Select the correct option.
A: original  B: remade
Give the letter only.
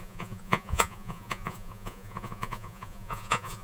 B